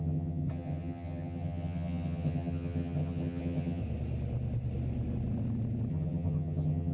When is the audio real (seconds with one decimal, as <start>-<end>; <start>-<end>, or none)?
3.8-5.9